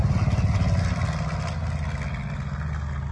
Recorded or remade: recorded